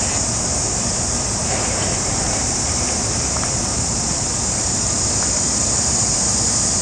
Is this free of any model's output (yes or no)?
no